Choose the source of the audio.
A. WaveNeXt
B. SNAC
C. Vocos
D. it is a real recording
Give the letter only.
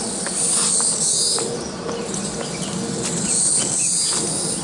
D